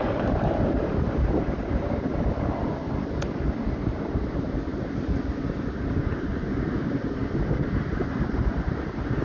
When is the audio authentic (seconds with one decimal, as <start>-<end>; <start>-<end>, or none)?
2.1-3.8; 4.7-5.4; 7.2-8.0